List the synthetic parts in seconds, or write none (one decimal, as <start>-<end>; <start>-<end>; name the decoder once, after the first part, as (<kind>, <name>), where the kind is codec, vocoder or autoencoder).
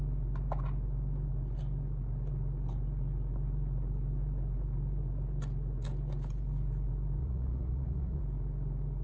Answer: 7.2-8.2 (vocoder, Vocos)